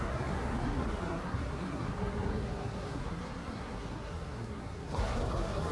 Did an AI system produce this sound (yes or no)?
yes